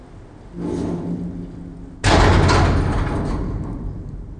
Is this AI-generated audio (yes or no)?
no